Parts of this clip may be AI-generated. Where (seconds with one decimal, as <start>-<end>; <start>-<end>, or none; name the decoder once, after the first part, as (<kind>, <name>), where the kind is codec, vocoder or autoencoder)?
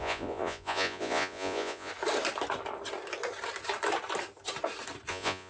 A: 0.0-1.9 (vocoder, Vocos); 5.1-5.5